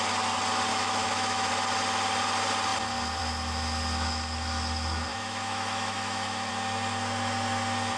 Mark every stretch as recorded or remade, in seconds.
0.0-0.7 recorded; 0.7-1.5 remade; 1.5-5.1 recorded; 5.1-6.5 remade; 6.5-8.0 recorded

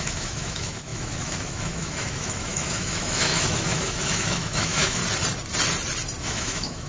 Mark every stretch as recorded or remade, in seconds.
0.0-5.0 remade; 5.0-6.2 recorded; 6.2-6.9 remade

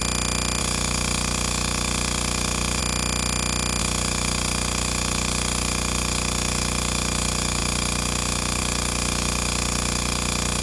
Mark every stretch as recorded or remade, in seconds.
0.0-0.6 recorded; 0.6-2.8 remade; 2.8-3.8 recorded; 3.8-10.6 remade

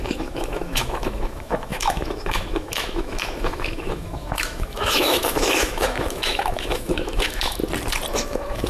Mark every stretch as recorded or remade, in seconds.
0.0-7.6 remade; 7.6-8.1 recorded; 8.1-8.7 remade

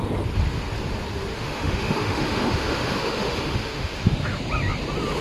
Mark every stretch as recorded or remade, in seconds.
0.0-1.3 recorded; 1.3-4.4 remade; 4.4-5.2 recorded